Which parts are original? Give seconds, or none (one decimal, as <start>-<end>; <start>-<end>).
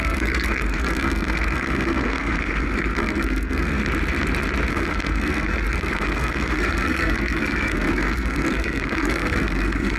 3.8-4.7